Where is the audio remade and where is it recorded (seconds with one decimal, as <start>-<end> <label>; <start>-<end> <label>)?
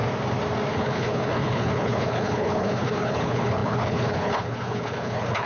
0.0-0.7 recorded; 0.7-5.5 remade